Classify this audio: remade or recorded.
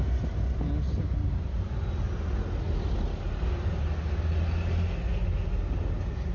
recorded